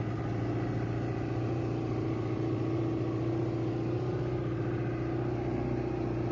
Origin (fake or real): real